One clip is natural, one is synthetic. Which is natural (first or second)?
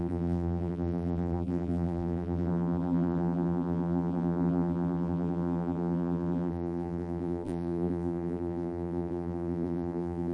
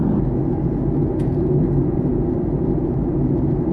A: second